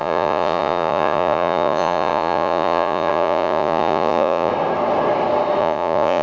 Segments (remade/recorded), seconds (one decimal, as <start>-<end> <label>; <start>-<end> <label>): 0.0-4.5 remade; 4.5-5.6 recorded; 5.6-6.2 remade